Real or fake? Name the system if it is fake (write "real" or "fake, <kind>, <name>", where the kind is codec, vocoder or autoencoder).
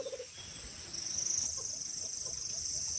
real